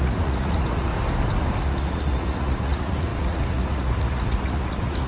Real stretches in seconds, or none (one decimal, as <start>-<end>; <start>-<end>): 0.9-1.6